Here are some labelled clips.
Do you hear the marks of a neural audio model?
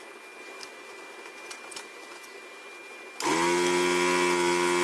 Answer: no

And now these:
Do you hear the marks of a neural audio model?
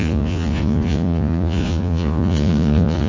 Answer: yes